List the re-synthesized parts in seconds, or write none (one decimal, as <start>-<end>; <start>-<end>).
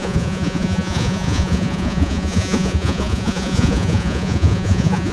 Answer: 0.0-5.1